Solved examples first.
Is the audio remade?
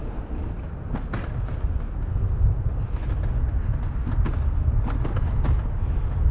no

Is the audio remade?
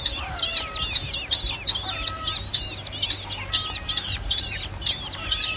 no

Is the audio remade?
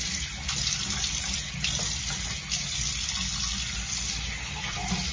no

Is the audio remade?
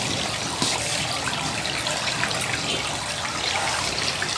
no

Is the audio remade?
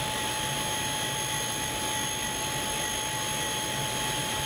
no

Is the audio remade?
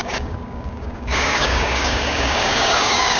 yes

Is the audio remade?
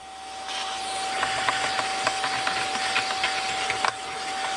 no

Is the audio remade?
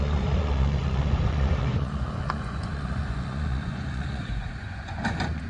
yes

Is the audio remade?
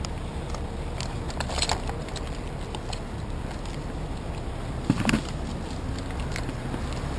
no